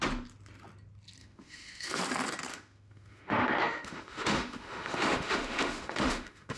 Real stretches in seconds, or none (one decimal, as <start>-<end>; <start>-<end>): 0.0-1.2; 2.0-2.5

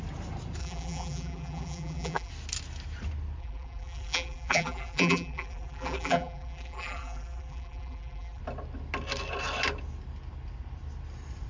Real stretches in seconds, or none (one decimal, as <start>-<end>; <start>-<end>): 0.0-0.6; 2.3-3.4; 8.4-11.5

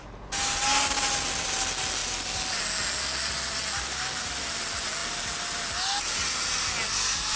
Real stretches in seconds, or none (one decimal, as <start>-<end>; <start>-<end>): 0.0-7.4

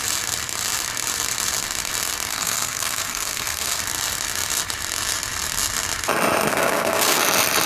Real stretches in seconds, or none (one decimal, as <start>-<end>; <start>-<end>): 0.0-2.3; 3.8-6.5; 7.2-7.7

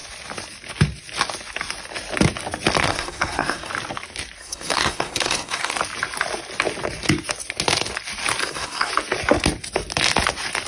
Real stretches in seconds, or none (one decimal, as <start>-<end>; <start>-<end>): 0.0-2.8; 3.7-4.4; 5.7-8.4; 8.9-10.7

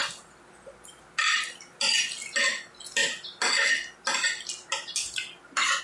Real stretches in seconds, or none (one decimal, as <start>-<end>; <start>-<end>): 0.0-5.8